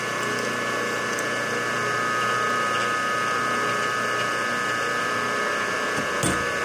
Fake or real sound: real